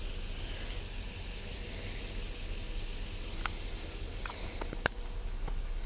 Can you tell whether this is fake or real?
real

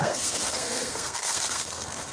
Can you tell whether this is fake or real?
fake